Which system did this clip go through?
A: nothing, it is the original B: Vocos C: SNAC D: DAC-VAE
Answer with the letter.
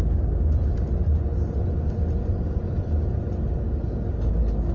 A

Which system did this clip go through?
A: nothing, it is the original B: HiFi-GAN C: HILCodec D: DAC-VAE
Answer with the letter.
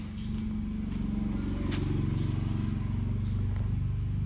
A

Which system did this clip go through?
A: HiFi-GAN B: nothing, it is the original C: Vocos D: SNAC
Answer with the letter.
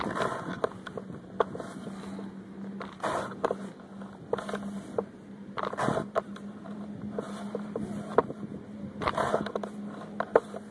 B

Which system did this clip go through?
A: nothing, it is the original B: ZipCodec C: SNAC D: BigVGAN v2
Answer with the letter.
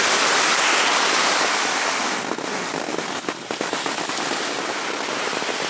A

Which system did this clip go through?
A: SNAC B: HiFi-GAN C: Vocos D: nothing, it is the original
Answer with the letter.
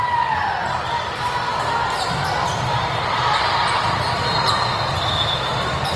D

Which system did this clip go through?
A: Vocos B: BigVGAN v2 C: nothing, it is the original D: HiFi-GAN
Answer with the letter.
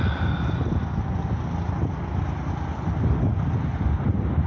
C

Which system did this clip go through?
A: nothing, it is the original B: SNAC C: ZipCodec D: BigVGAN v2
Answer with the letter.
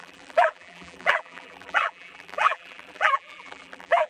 D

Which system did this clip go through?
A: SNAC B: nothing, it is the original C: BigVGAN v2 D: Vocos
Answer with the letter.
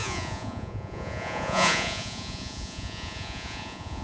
D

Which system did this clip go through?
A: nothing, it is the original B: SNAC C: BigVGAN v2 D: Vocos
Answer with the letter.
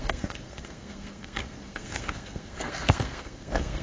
B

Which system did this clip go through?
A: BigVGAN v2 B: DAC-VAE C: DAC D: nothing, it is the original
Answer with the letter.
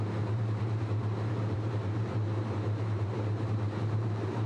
A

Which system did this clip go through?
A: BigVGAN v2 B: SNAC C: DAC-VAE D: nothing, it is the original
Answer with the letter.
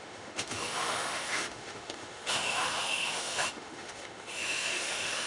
C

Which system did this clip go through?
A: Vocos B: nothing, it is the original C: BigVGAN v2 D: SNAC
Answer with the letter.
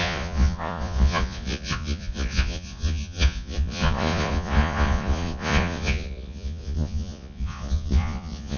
A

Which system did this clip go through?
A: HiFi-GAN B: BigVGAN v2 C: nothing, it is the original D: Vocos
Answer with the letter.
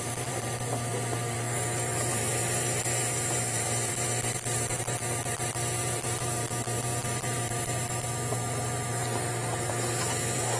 B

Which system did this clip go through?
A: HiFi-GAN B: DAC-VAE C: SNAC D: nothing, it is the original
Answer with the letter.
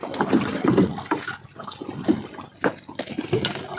D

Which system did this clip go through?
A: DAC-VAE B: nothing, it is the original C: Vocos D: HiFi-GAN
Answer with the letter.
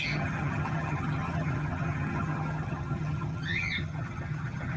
D